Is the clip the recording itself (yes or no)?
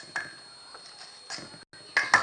yes